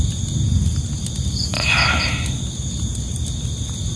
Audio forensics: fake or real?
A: real